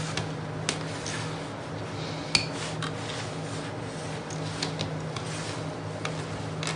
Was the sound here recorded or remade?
recorded